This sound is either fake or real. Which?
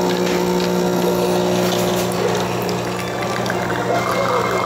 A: real